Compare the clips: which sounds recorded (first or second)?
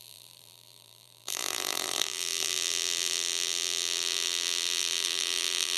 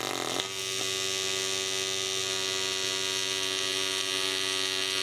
second